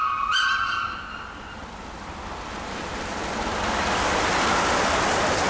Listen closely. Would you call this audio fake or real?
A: real